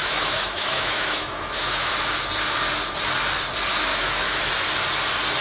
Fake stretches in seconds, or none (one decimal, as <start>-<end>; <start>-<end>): 0.0-1.9; 3.9-4.5